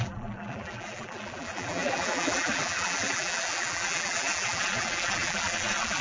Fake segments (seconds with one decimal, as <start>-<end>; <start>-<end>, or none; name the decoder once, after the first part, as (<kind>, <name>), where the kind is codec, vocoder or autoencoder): 0.0-6.0 (vocoder, BigVGAN v2)